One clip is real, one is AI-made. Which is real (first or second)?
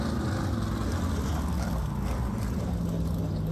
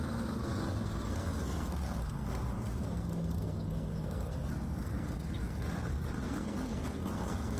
first